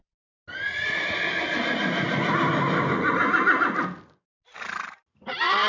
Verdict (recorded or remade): recorded